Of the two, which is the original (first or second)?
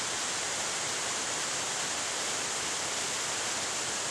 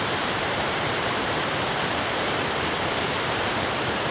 first